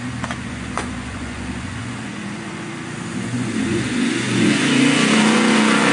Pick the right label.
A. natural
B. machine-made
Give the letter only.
B